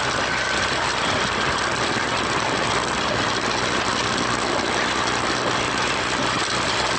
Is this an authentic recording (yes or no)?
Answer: yes